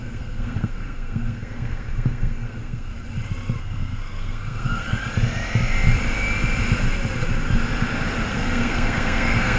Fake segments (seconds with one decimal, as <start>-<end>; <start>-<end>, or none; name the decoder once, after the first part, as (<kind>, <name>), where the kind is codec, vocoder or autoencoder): 0.0-2.9 (codec, SNAC); 3.6-5.0; 8.3-9.6